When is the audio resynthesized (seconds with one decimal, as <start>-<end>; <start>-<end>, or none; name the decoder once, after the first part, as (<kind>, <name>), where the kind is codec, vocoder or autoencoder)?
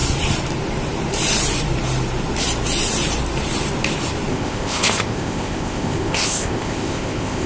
4.3-7.5 (codec, ZipCodec)